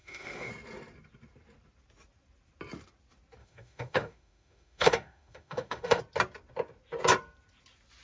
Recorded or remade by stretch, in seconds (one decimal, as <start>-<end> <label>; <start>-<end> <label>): 0.0-0.5 remade; 0.5-3.4 recorded; 3.4-6.0 remade; 6.0-8.0 recorded